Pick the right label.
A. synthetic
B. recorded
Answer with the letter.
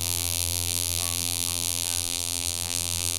A